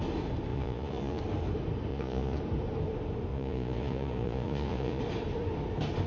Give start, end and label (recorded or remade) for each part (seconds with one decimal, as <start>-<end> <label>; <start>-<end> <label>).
0.0-0.5 recorded; 0.5-1.2 remade; 1.2-1.9 recorded; 1.9-2.4 remade; 2.4-3.3 recorded; 3.3-5.0 remade; 5.0-6.1 recorded